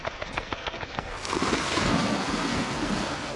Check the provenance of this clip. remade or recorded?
remade